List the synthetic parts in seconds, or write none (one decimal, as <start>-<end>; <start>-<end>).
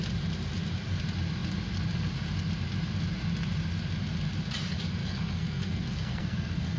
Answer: 5.0-6.8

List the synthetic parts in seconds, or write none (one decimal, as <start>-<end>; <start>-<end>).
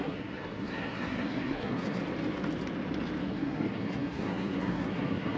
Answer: 0.0-2.0; 3.2-5.4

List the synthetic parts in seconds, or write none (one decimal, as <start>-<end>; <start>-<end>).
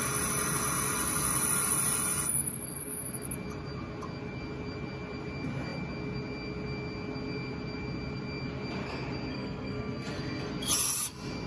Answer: 9.3-10.5